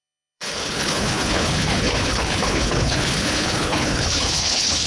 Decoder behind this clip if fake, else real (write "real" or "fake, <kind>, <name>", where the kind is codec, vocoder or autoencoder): fake, codec, HILCodec